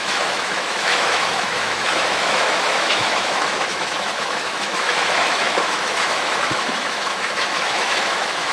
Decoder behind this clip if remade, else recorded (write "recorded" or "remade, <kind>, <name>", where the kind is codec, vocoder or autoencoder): remade, autoencoder, DAC-VAE